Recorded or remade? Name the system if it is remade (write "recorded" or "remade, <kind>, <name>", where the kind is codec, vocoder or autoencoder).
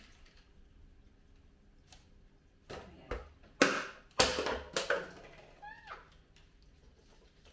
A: recorded